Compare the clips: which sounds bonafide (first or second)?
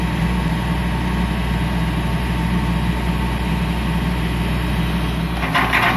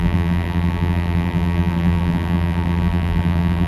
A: first